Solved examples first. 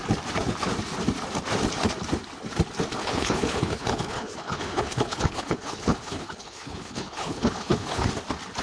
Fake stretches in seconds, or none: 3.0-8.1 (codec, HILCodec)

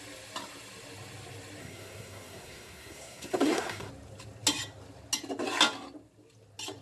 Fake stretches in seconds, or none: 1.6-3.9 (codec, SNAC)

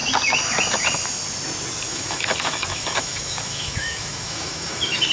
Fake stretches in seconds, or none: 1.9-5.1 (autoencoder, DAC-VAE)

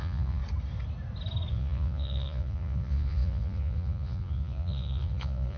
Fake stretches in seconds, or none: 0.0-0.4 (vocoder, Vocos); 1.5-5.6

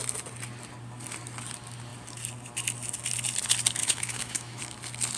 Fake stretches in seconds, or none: 3.8-4.6 (autoencoder, DAC-VAE)

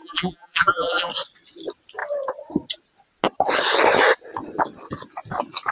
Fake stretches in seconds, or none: 0.0-1.1 (vocoder, BigVGAN v2)

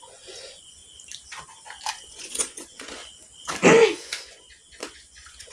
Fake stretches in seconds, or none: 0.0-0.8 (vocoder, Vocos); 1.9-3.0; 3.7-5.5